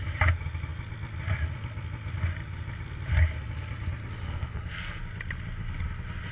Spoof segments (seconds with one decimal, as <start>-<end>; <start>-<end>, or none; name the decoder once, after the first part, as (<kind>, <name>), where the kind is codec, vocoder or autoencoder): 4.2-5.0 (codec, SNAC)